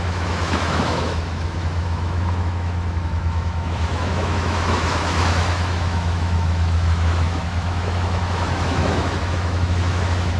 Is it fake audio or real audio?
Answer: fake